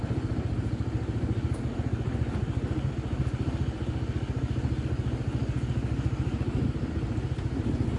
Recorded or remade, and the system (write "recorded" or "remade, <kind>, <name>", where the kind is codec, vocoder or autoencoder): recorded